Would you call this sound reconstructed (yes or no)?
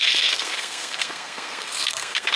yes